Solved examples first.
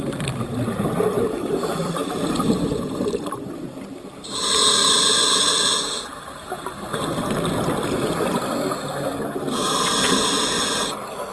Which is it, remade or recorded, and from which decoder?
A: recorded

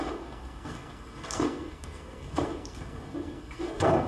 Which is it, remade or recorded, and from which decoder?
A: remade, codec, SNAC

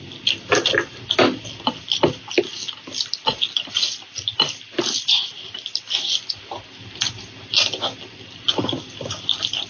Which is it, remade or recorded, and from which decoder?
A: recorded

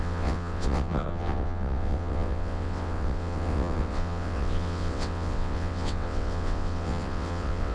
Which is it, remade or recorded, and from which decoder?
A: remade, vocoder, WaveNeXt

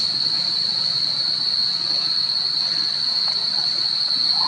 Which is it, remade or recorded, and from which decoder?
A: recorded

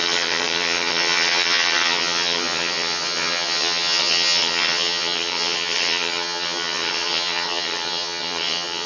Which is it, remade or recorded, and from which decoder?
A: remade, vocoder, HiFi-GAN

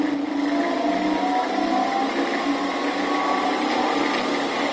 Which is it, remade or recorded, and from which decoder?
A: recorded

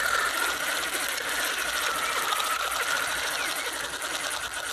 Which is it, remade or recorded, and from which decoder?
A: recorded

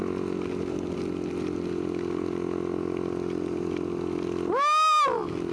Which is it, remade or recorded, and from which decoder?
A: recorded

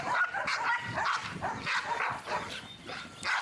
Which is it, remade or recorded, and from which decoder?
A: recorded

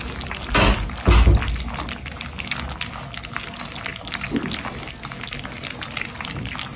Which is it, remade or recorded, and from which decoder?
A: recorded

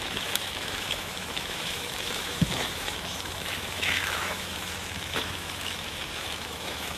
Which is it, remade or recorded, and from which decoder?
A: remade, autoencoder, DAC-VAE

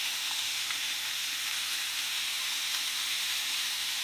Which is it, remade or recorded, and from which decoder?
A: remade, autoencoder, DAC-VAE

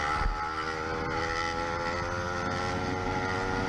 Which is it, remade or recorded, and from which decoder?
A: recorded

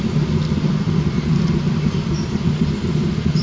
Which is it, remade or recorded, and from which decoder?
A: recorded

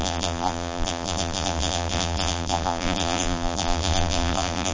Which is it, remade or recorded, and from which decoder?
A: remade, vocoder, BigVGAN v2